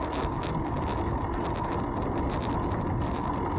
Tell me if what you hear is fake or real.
real